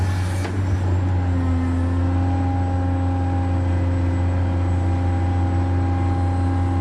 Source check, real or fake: real